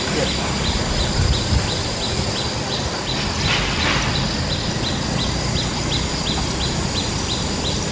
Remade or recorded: recorded